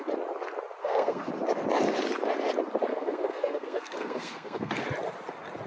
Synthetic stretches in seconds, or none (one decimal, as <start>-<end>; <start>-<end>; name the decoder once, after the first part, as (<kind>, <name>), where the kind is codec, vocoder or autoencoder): 0.8-1.3 (codec, SNAC); 2.9-4.8